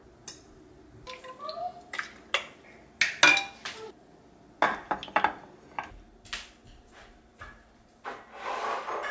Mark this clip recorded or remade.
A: recorded